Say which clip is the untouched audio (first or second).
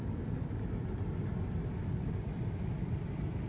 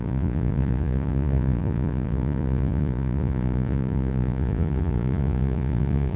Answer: first